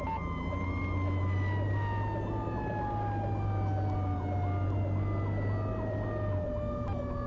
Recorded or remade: recorded